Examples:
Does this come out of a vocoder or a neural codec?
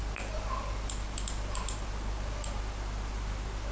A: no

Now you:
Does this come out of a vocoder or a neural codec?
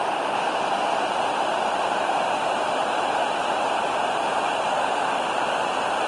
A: no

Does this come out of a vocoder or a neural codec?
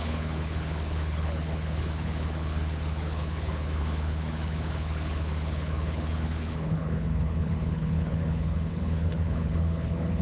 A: yes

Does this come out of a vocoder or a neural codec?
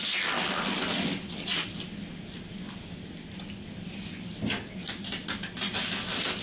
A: no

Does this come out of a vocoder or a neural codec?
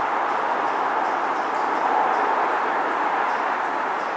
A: no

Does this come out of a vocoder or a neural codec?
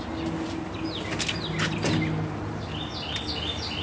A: no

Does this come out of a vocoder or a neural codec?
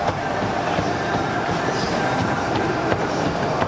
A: yes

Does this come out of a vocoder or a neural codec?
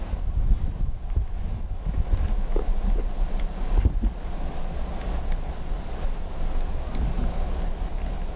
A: no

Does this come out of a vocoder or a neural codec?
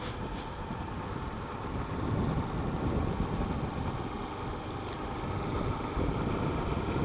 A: no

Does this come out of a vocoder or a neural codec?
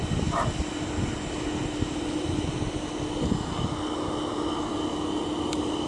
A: no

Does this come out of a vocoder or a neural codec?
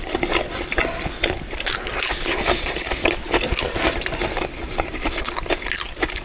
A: no